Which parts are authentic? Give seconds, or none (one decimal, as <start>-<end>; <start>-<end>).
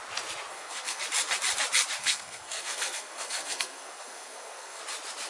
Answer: 0.0-0.5; 1.0-2.0; 4.8-5.3